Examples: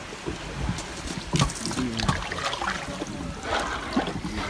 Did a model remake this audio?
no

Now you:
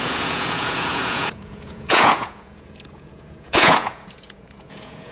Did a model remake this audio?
yes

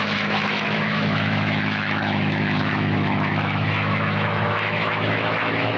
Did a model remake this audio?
yes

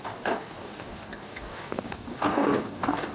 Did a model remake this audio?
yes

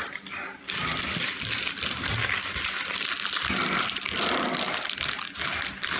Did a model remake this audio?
no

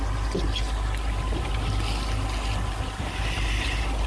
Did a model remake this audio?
no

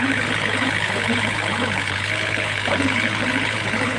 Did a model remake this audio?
yes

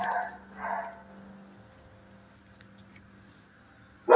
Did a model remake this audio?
no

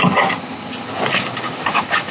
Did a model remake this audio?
no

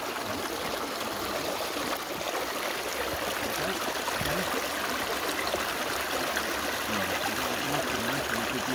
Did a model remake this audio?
no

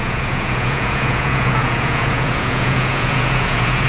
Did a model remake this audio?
yes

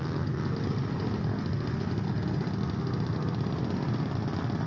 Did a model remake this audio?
no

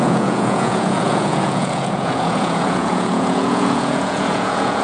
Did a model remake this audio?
yes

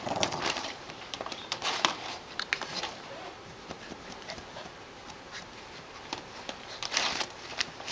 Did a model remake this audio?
yes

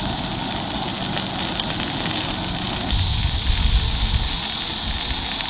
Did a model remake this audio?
no